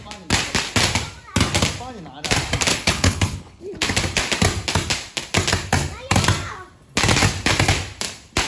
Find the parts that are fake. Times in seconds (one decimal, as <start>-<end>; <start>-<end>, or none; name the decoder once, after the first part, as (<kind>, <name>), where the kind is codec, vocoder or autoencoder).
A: 2.7-3.6 (codec, HILCodec)